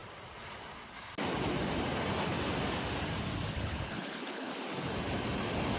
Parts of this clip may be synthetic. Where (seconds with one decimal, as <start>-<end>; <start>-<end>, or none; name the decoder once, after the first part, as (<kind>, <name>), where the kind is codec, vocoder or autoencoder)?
3.5-4.5 (codec, HILCodec)